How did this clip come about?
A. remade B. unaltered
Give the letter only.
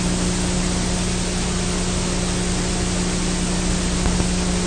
B